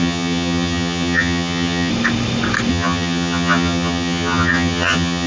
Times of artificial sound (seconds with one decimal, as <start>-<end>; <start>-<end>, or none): 0.0-1.9; 2.7-5.3